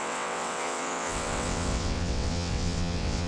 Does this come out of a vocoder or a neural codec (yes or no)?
yes